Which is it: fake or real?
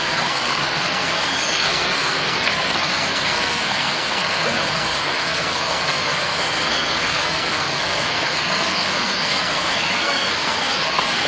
fake